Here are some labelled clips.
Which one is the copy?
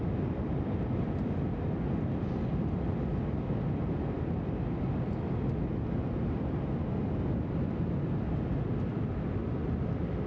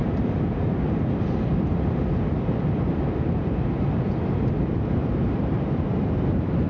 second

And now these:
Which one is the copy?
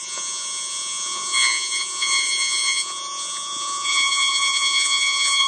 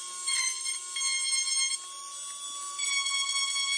first